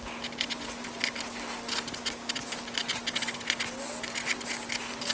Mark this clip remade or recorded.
recorded